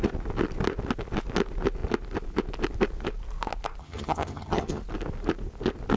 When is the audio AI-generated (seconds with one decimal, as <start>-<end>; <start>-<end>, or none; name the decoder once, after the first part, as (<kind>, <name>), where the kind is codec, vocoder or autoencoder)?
3.8-4.8 (vocoder, HiFi-GAN)